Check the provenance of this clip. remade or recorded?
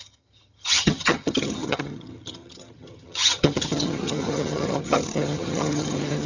remade